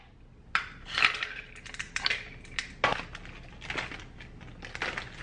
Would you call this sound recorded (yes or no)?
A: yes